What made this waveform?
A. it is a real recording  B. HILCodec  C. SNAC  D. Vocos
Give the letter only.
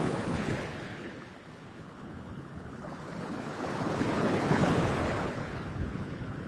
B